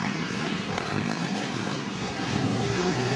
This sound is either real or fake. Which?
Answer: fake